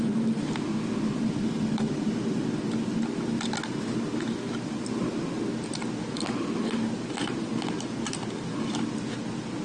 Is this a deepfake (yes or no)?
no